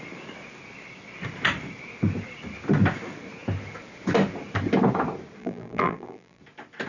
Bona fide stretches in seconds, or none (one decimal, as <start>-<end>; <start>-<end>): 0.0-5.4; 6.4-6.9